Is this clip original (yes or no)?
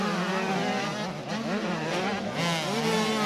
yes